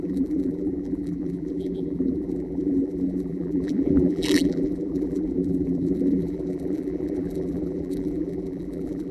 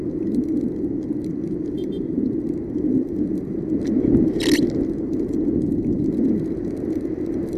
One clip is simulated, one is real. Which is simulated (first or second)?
first